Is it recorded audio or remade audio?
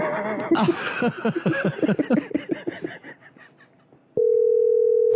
recorded